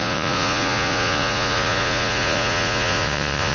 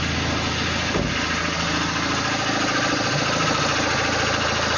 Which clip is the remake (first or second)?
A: first